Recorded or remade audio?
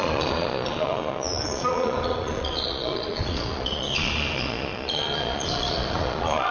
remade